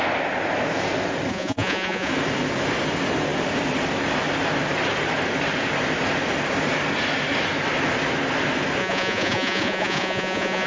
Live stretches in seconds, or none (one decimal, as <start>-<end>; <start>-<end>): 0.0-1.3; 2.1-8.8